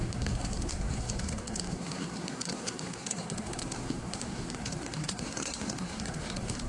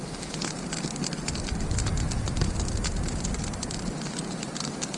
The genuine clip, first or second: second